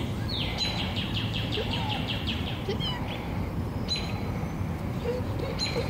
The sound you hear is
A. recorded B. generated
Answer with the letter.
B